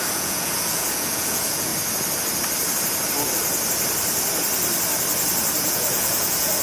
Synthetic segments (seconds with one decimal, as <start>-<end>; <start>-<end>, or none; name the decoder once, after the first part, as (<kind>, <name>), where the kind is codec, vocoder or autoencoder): 0.0-1.7 (vocoder, Vocos); 5.7-6.6